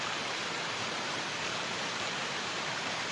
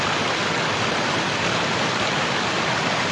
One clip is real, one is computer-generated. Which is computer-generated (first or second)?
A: first